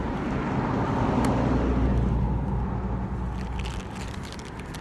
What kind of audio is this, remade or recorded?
recorded